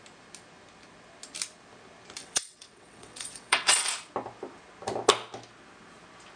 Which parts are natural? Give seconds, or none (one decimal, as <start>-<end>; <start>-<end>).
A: 0.0-2.2; 3.8-6.4